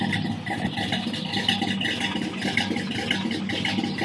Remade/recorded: recorded